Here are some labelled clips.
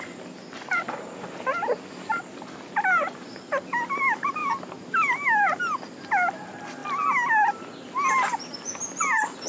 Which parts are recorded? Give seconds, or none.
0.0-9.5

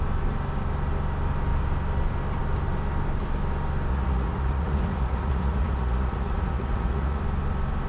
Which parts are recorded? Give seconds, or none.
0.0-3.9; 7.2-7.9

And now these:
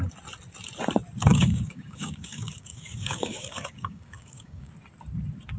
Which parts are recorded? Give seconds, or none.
0.0-1.3; 4.7-5.6

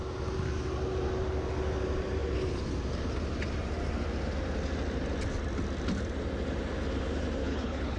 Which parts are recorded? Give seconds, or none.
0.0-7.4